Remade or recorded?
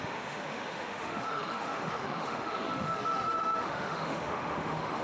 remade